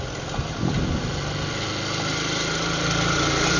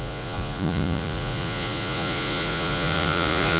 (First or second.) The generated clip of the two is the second